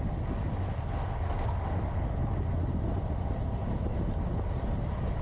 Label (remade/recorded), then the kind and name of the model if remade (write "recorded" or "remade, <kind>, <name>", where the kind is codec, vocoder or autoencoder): recorded